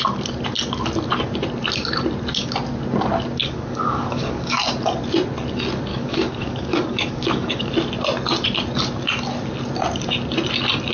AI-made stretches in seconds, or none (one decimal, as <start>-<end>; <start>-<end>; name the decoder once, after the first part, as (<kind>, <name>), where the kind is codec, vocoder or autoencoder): 3.4-4.6 (codec, DAC); 5.9-7.7